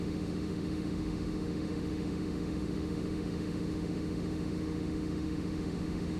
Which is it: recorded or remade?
remade